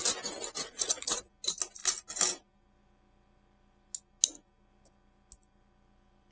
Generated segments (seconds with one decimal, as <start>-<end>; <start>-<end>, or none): 0.6-1.2